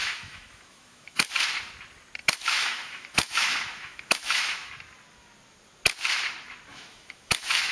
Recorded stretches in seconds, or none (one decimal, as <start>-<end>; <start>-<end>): 1.3-2.2; 4.7-6.7